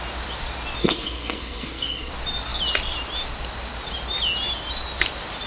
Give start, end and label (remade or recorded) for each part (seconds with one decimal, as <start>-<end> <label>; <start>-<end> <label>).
0.0-0.8 recorded; 0.8-2.1 remade; 2.1-5.5 recorded